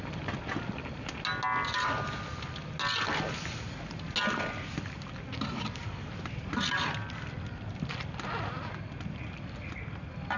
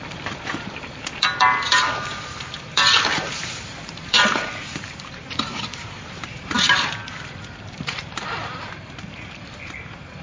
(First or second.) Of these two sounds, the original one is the first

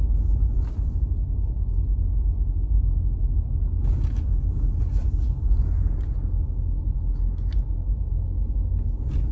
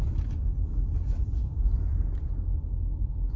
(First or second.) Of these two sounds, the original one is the first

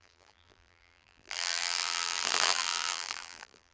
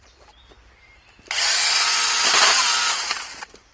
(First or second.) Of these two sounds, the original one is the second